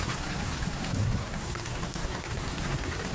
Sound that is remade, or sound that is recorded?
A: remade